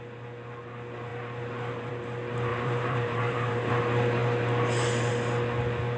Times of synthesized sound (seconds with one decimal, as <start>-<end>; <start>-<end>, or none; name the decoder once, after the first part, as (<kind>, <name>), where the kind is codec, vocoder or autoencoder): 2.5-3.7 (vocoder, BigVGAN v2)